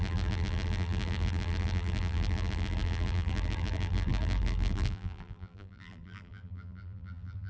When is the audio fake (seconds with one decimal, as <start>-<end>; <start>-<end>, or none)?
0.0-7.5